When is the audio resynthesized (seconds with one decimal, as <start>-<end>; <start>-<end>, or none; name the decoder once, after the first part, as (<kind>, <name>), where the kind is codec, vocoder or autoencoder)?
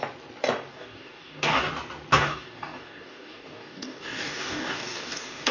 0.7-1.7 (codec, DAC); 2.1-5.5